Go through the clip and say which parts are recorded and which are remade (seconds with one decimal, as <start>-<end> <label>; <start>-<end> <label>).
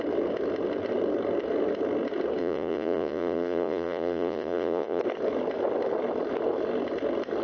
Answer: 0.0-2.4 recorded; 2.4-5.0 remade; 5.0-7.4 recorded